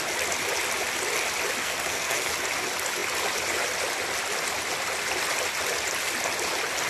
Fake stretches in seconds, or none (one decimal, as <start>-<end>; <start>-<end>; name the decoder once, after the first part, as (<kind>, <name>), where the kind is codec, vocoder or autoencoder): 1.6-2.3 (codec, SNAC)